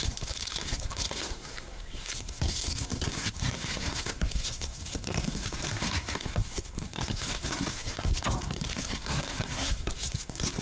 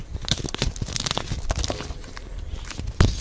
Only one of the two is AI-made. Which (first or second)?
first